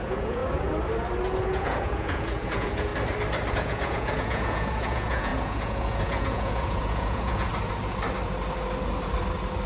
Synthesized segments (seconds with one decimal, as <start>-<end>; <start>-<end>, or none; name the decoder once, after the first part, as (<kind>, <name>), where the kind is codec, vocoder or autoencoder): 0.0-0.4 (vocoder, Vocos); 1.4-2.9; 3.5-7.5